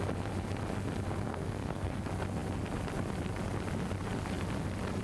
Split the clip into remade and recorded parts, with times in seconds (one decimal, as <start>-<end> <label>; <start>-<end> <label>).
0.0-1.3 recorded; 1.3-2.0 remade; 2.0-5.0 recorded